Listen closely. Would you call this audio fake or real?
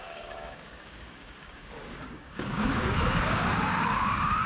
fake